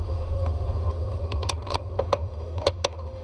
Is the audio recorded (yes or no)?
no